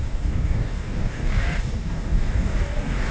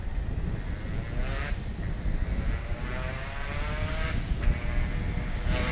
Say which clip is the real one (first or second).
second